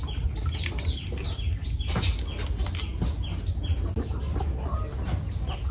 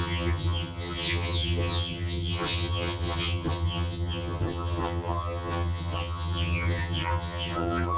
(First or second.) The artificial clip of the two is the second